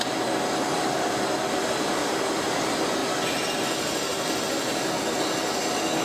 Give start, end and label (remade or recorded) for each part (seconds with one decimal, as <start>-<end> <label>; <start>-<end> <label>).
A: 0.0-6.0 recorded